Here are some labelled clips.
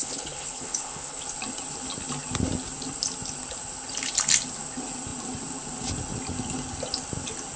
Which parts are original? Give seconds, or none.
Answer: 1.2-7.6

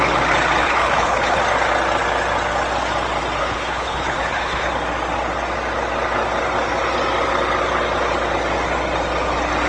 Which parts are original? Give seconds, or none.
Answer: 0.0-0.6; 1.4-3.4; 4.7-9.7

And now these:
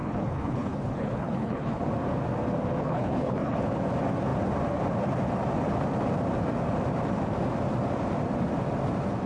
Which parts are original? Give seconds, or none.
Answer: 1.8-2.8; 3.6-9.3

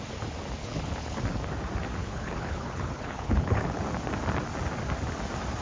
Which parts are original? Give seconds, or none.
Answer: 0.0-0.6; 1.2-2.0; 3.8-5.6